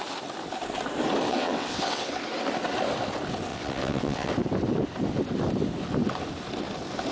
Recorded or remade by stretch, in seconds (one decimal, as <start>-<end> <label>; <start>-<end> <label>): 0.0-1.3 recorded; 1.3-2.2 remade; 2.2-3.5 recorded; 3.5-4.3 remade; 4.3-7.1 recorded